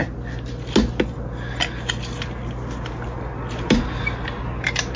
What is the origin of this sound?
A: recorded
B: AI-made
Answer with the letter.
A